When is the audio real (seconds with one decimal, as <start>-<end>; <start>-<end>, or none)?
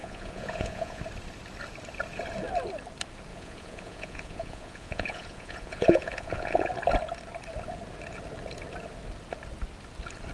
1.0-3.3; 6.7-10.3